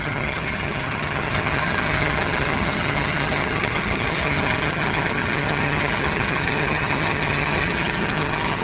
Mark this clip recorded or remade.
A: remade